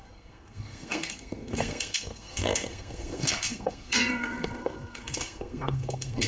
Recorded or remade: remade